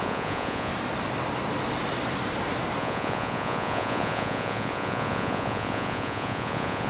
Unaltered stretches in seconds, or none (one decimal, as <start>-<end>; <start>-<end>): 0.7-2.8